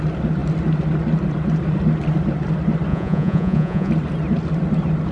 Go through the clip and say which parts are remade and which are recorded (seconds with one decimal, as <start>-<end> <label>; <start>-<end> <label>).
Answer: 0.0-2.9 recorded; 2.9-3.9 remade; 3.9-5.1 recorded